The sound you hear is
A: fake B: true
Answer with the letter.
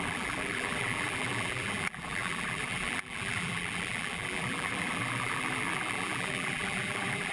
A